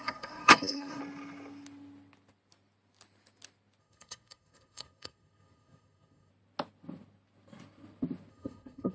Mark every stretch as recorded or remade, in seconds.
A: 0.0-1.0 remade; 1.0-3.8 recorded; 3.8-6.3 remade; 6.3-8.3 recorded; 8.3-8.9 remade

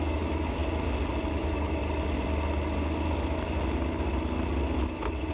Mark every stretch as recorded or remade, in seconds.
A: 0.0-0.6 remade; 0.6-1.3 recorded; 1.3-1.8 remade; 1.8-5.3 recorded